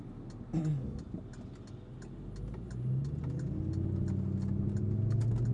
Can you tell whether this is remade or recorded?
recorded